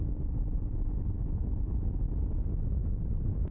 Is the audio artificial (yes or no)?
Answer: no